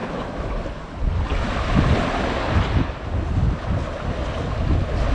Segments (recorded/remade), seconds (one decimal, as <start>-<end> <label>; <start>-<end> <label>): 0.0-0.6 remade; 0.6-5.1 recorded